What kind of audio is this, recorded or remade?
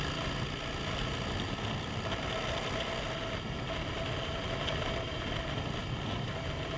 recorded